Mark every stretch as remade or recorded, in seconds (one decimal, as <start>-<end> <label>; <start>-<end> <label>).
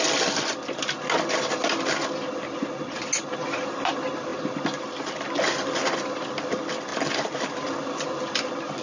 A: 0.0-8.8 recorded